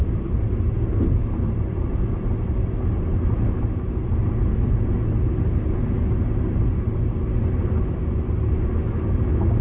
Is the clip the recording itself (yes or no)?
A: yes